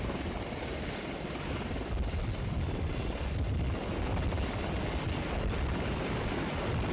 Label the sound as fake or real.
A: real